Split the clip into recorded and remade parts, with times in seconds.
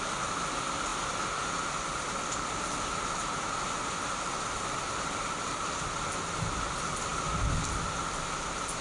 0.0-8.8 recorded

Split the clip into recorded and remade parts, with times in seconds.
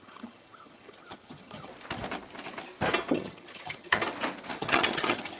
0.0-1.7 remade; 1.7-3.1 recorded; 3.1-4.0 remade; 4.0-4.5 recorded; 4.5-5.4 remade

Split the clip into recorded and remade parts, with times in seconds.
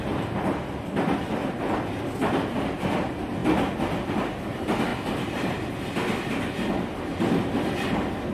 0.0-1.4 remade; 1.4-2.6 recorded; 2.6-3.4 remade; 3.4-4.1 recorded; 4.1-4.9 remade; 4.9-8.3 recorded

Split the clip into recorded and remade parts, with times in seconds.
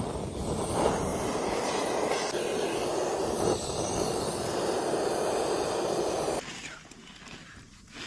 0.0-8.1 recorded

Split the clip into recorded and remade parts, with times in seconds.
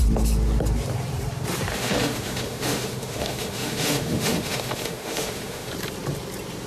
0.0-1.7 recorded; 1.7-5.7 remade; 5.7-6.7 recorded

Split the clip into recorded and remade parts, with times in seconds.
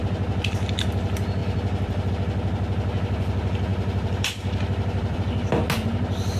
0.0-1.4 recorded; 1.4-2.1 remade; 2.1-3.7 recorded; 3.7-5.2 remade; 5.2-6.4 recorded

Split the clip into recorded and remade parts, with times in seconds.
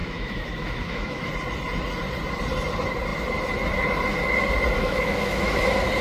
0.0-1.3 remade; 1.3-4.8 recorded; 4.8-5.6 remade; 5.6-6.0 recorded